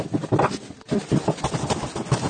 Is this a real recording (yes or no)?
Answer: yes